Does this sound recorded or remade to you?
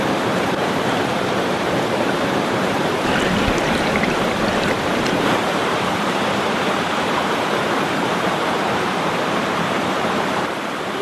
remade